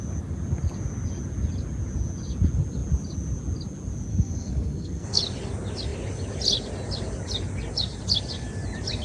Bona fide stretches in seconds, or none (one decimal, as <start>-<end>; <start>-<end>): 0.0-4.1; 5.2-9.0